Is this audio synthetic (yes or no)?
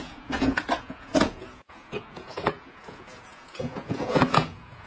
yes